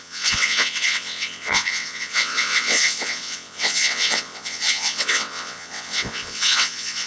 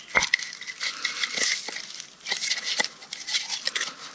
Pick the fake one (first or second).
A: first